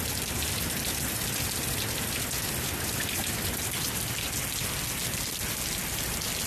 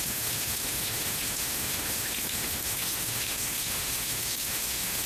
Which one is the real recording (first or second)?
first